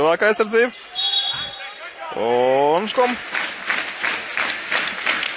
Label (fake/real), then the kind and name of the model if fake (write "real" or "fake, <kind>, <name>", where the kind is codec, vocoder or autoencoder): real